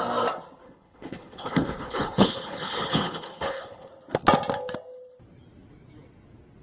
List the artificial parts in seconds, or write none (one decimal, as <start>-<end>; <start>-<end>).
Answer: 0.6-3.9